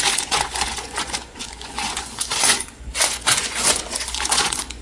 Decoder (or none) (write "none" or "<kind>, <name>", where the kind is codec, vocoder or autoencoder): vocoder, Vocos